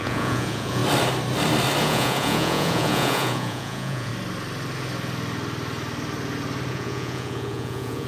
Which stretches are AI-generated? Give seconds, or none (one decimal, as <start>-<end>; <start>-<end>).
0.0-0.8; 1.8-4.1; 6.7-8.1